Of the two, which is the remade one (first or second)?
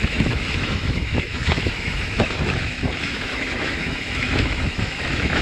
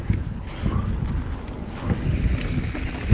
first